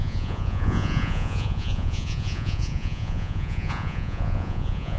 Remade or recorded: remade